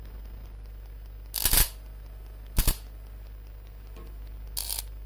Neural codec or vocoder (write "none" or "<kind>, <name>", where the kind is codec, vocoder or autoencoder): none